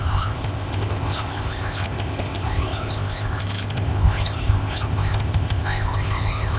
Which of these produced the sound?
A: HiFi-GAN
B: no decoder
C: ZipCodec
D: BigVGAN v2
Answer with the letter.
C